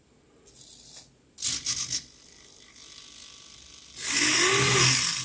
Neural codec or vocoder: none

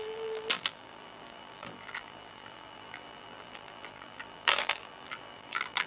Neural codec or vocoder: vocoder, BigVGAN v2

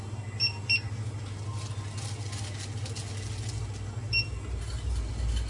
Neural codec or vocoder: none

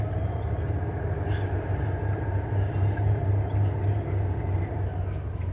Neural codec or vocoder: vocoder, BigVGAN v2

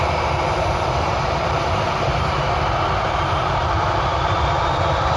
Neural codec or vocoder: vocoder, BigVGAN v2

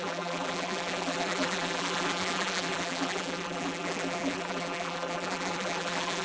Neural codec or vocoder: vocoder, BigVGAN v2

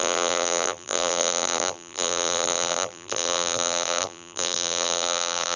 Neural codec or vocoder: vocoder, BigVGAN v2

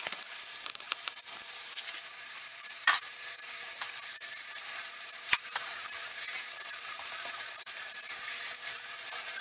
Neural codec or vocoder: vocoder, BigVGAN v2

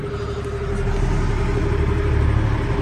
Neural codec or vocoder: none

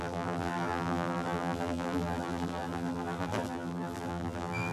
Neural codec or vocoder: vocoder, BigVGAN v2